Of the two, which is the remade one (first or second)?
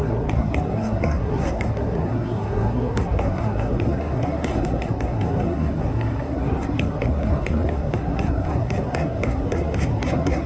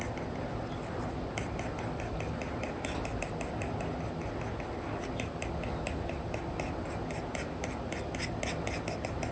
first